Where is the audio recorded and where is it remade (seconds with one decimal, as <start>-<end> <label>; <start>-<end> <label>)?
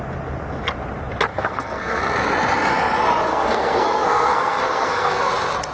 0.0-1.3 recorded; 1.3-2.0 remade; 2.0-3.3 recorded; 3.3-5.3 remade; 5.3-5.7 recorded